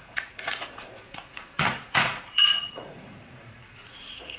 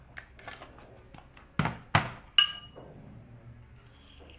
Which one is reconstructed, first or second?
first